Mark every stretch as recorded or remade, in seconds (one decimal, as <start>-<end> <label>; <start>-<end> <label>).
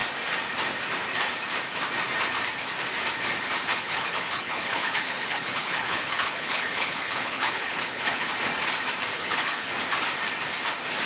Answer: 0.0-3.7 recorded; 3.7-8.3 remade; 8.3-9.1 recorded; 9.1-9.7 remade; 9.7-11.1 recorded